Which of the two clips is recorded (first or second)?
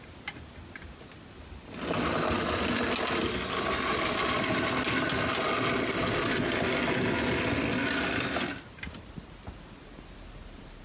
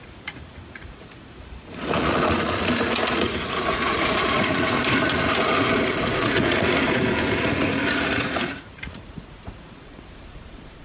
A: first